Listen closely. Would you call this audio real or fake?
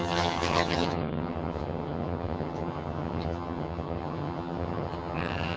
fake